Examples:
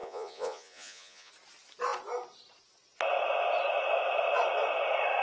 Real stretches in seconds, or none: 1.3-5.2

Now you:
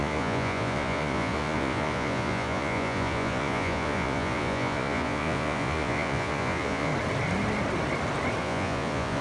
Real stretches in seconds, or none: 6.9-8.4

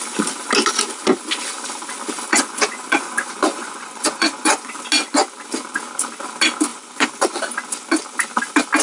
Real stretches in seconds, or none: 0.0-2.3; 4.7-6.7; 7.4-8.8

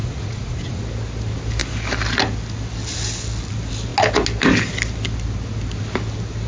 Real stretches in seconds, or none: 0.8-6.5

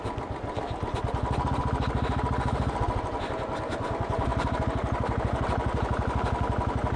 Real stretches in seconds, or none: 0.0-7.0

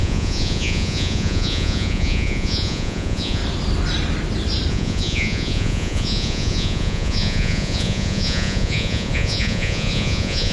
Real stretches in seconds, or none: 3.4-4.7